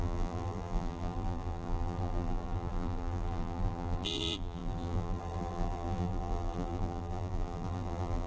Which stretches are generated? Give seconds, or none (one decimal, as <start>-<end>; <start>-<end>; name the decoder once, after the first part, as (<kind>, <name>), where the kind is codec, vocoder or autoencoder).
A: 0.0-8.3 (vocoder, BigVGAN v2)